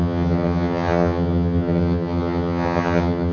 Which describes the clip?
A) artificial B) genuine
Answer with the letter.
A